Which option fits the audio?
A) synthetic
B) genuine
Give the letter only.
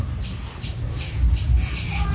B